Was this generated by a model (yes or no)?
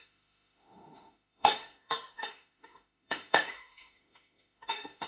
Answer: yes